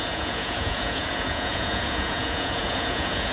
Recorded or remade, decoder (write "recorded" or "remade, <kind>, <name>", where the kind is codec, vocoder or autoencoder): remade, vocoder, Vocos